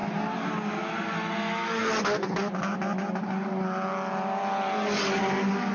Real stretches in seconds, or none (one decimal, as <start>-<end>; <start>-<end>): 0.0-5.7